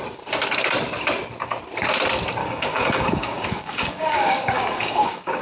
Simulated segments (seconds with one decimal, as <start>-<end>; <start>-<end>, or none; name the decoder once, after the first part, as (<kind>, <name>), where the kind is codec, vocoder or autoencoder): 2.4-5.4 (codec, DAC)